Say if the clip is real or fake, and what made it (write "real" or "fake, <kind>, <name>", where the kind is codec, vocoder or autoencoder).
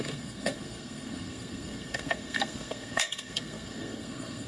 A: fake, codec, SNAC